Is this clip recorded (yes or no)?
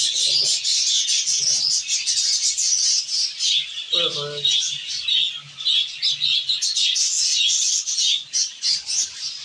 yes